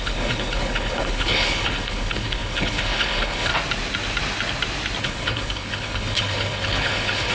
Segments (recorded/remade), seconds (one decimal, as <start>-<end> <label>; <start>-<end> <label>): 0.0-3.5 remade; 3.5-5.0 recorded; 5.0-7.3 remade